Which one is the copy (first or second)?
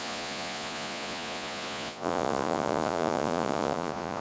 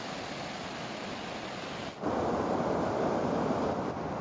first